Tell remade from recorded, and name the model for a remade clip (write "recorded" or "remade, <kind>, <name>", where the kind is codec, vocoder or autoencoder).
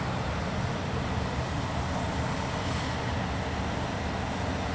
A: recorded